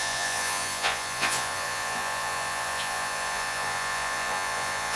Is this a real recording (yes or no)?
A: no